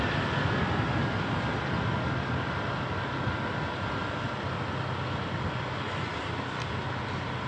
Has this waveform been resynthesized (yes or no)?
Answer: no